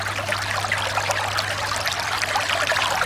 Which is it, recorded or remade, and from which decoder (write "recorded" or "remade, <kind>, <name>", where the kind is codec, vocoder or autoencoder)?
recorded